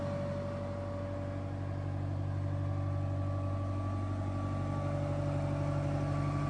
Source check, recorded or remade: recorded